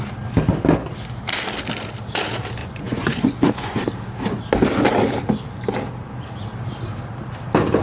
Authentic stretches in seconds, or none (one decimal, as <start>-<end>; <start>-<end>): 0.0-2.6; 3.8-7.8